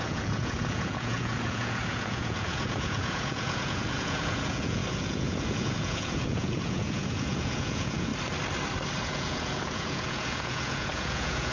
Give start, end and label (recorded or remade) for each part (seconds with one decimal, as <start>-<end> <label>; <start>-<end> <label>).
0.0-8.1 remade; 8.1-9.0 recorded; 9.0-11.5 remade